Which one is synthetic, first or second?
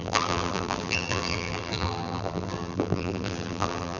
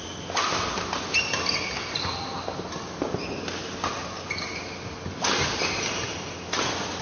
first